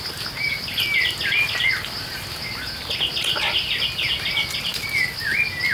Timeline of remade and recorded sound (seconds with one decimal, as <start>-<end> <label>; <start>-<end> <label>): 0.0-5.7 recorded